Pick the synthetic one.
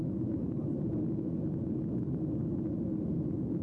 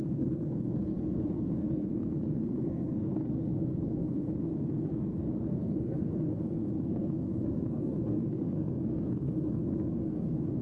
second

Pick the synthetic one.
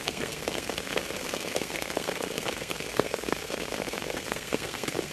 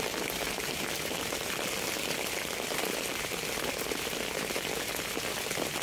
first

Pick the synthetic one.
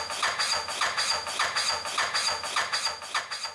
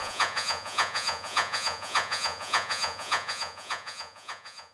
second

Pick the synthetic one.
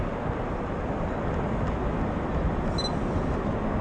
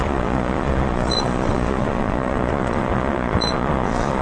second